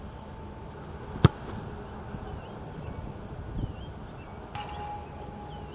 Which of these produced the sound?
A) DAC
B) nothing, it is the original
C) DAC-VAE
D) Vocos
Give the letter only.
B